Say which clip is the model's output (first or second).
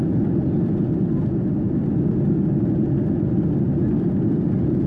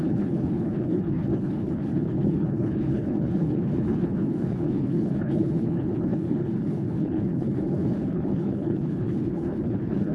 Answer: second